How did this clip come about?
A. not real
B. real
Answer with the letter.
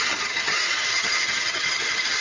A